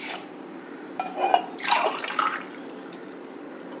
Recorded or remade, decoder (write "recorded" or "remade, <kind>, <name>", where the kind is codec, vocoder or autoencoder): remade, vocoder, BigVGAN v2